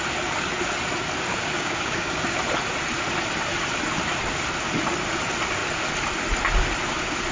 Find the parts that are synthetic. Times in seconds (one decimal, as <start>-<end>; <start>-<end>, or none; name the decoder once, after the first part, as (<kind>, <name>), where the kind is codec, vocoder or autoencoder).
1.3-2.4 (codec, DAC)